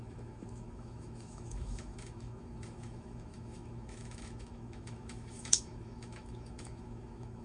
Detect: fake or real fake